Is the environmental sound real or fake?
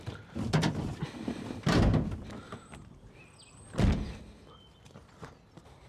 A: real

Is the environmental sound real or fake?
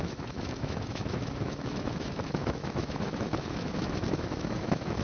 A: fake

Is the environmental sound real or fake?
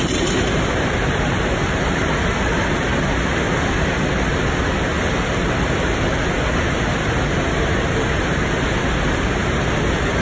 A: real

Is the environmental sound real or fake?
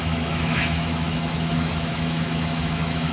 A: fake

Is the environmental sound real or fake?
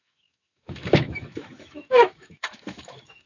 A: fake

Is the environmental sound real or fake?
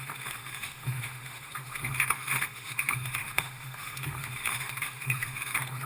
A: fake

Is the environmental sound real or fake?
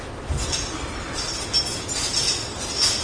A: real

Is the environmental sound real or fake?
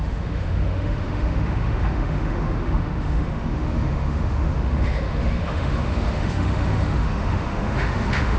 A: fake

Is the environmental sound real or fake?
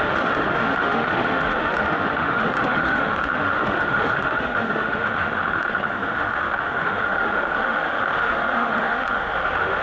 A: fake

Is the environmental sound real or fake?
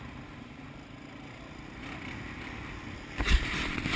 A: real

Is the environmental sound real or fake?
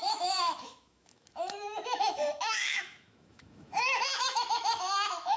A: fake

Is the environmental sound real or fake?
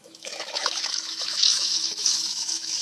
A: fake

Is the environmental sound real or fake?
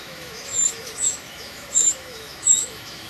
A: fake